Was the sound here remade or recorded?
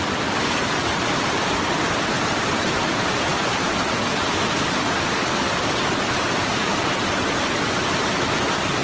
recorded